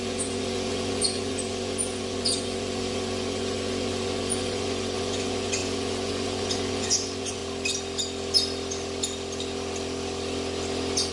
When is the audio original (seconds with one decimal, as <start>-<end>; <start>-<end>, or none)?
7.4-11.1